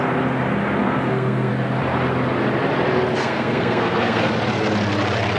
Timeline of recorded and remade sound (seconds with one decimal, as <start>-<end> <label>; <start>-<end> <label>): 0.0-0.8 recorded; 0.8-1.5 remade; 1.5-3.2 recorded; 3.2-4.3 remade; 4.3-5.4 recorded